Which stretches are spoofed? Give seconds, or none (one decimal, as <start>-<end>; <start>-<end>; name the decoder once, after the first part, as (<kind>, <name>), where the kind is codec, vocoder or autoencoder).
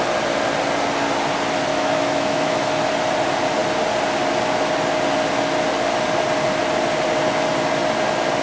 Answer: 1.7-2.7 (autoencoder, DAC-VAE)